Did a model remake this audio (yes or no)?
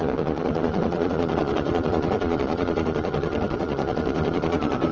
yes